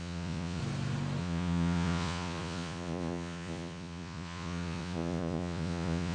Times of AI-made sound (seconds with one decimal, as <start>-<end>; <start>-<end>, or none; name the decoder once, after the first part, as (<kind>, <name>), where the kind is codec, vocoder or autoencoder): 0.0-0.6 (vocoder, Vocos); 1.2-6.1